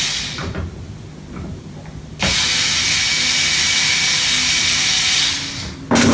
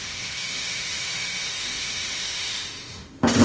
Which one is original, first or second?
first